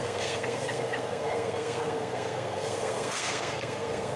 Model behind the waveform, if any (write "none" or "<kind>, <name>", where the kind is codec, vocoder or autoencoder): codec, SNAC